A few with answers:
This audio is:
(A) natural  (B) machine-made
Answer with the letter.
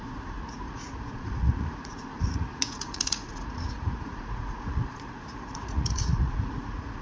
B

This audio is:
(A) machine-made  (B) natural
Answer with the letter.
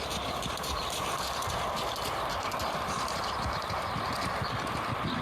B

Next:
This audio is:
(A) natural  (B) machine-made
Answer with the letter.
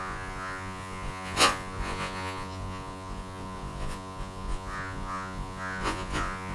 B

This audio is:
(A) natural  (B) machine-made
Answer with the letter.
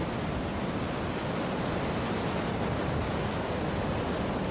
A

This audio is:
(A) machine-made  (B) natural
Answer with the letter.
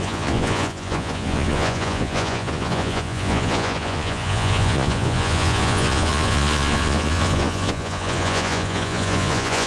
A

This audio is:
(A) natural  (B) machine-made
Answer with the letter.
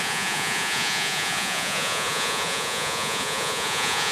B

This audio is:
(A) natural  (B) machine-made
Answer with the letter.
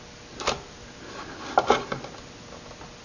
A